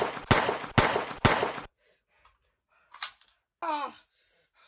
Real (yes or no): yes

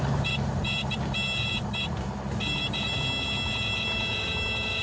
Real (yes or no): no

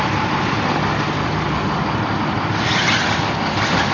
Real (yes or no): yes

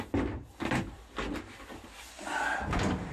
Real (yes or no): yes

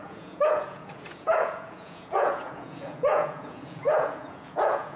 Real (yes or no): no